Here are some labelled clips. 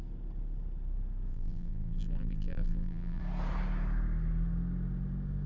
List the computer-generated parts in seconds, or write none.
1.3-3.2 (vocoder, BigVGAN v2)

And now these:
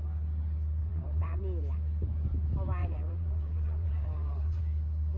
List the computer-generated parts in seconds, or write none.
0.8-1.4 (vocoder, WaveNeXt); 2.8-4.6

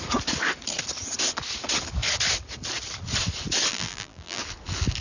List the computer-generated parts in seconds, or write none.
3.7-4.4 (vocoder, BigVGAN v2)

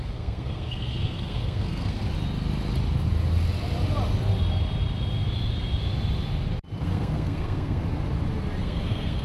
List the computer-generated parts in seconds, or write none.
0.0-2.0 (codec, SNAC); 6.8-7.8; 8.6-9.2

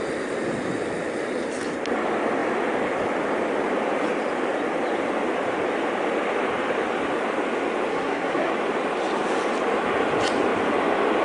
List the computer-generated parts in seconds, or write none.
7.9-8.5 (codec, SNAC)

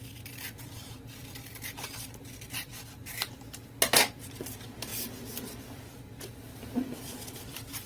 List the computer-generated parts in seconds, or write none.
0.0-2.7 (vocoder, BigVGAN v2); 4.1-4.9; 5.7-7.9